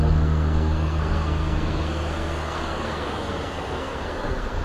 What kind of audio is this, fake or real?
fake